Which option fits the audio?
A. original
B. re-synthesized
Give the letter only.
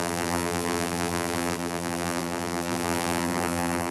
B